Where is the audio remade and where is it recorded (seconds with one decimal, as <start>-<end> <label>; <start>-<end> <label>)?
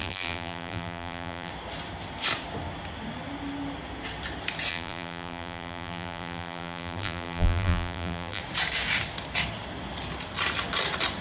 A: 0.0-1.5 remade; 1.5-4.7 recorded; 4.7-8.4 remade; 8.4-11.2 recorded